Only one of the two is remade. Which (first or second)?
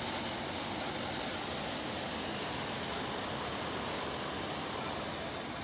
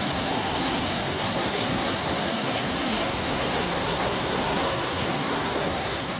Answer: second